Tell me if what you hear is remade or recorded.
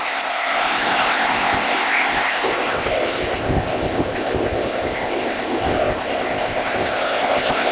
remade